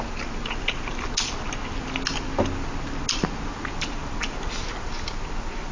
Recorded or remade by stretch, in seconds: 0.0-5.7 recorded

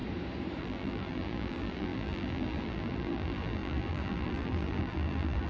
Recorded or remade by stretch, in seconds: 0.0-0.6 recorded; 0.6-5.5 remade

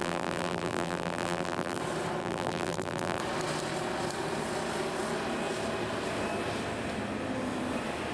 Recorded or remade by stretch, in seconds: 0.0-1.8 remade; 1.8-2.2 recorded; 2.2-3.2 remade; 3.2-8.1 recorded

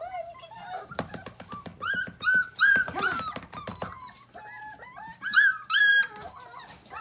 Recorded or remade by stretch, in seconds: 0.0-1.7 remade; 1.7-2.5 recorded; 2.5-7.0 remade

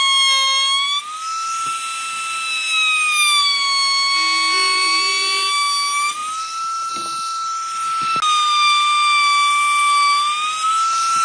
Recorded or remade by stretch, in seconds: 0.0-11.2 recorded

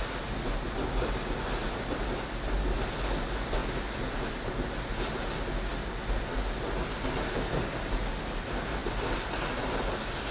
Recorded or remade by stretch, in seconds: 0.0-10.3 recorded

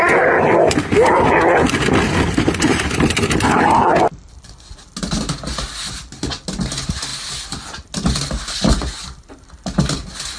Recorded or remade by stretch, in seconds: 0.0-2.7 recorded; 2.7-3.4 remade; 3.4-10.4 recorded

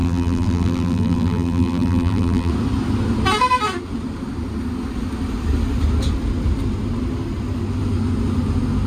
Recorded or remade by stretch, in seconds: 0.0-2.5 remade; 2.5-8.9 recorded